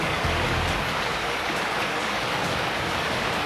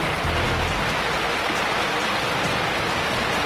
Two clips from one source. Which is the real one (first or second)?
second